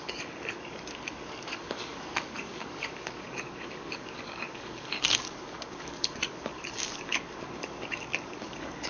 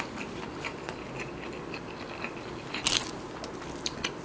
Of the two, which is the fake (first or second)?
first